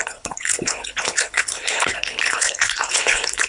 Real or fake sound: fake